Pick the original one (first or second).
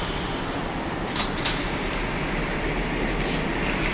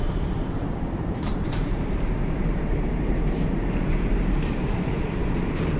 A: first